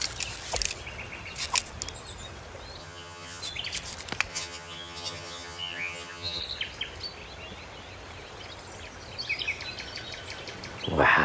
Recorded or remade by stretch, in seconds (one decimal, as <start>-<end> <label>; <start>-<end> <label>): 0.0-2.8 recorded; 2.8-3.4 remade; 3.4-4.3 recorded; 4.3-6.4 remade; 6.4-11.2 recorded